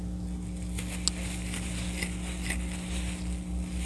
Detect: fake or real real